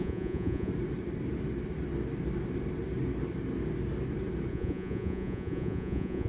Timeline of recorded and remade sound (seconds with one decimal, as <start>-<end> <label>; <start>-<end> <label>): 0.0-0.7 remade; 0.7-4.5 recorded; 4.5-6.3 remade